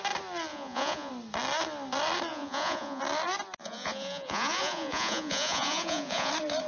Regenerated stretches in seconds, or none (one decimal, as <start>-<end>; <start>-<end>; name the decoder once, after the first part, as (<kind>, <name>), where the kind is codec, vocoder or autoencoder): 0.5-1.1 (vocoder, Vocos); 2.3-3.0; 3.6-6.3